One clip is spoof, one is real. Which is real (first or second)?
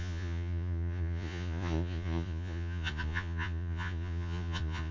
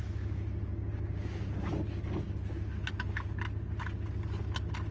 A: second